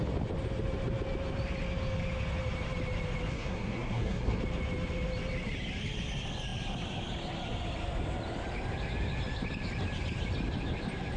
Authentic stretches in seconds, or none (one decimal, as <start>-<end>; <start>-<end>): 0.0-3.3; 4.4-11.2